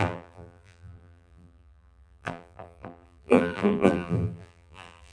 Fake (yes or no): yes